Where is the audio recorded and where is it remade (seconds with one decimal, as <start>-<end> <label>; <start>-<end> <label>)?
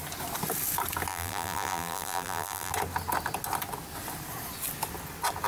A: 0.0-1.1 recorded; 1.1-2.7 remade; 2.7-5.5 recorded